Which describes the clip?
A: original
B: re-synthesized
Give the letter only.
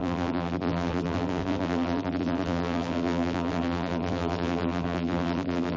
B